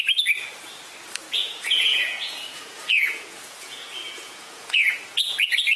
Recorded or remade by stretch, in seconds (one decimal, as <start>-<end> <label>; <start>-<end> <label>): 0.0-1.4 recorded; 1.4-4.9 remade; 4.9-5.8 recorded